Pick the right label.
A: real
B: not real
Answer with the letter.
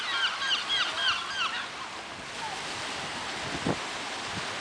A